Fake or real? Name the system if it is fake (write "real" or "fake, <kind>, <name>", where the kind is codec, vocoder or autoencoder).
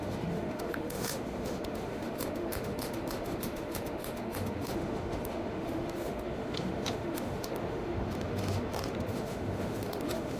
fake, autoencoder, DAC-VAE